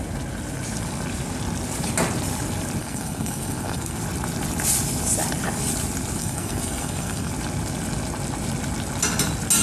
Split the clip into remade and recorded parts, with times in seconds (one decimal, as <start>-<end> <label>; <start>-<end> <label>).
0.0-2.8 recorded; 2.8-4.0 remade; 4.0-6.2 recorded; 6.2-7.3 remade; 7.3-9.6 recorded